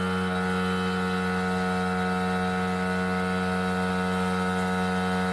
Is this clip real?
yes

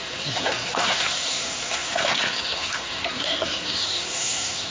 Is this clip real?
no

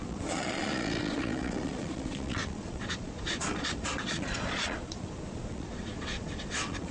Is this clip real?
no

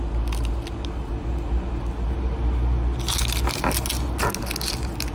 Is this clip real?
yes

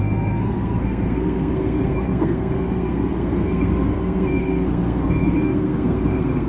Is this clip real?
no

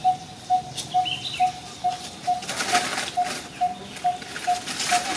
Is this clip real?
yes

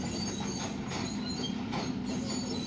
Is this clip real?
yes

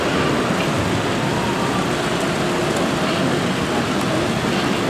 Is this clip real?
yes